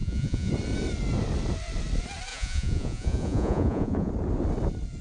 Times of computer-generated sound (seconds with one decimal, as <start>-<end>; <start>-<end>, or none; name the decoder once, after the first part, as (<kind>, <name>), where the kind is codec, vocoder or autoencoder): 0.0-0.5 (vocoder, Vocos); 2.3-4.1

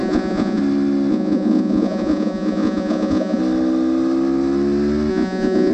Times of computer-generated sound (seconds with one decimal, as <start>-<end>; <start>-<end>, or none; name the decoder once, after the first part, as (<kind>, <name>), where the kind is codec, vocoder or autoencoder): 0.0-0.6 (vocoder, Vocos); 1.1-3.4; 5.1-5.7

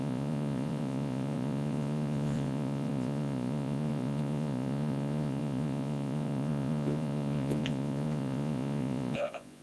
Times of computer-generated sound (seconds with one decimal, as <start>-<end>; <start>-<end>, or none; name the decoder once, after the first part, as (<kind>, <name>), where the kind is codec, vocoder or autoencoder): 0.0-9.6 (vocoder, Vocos)